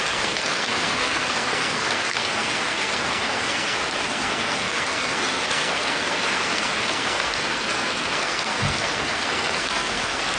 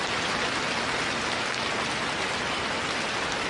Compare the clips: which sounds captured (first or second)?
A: second